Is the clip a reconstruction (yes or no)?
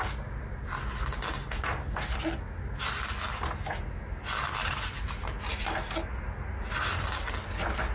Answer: no